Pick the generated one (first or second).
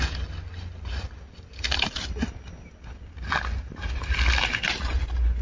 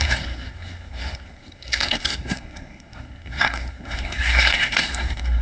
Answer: second